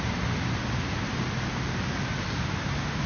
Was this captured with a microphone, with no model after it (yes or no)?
yes